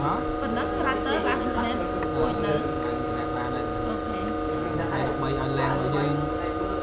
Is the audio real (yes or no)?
yes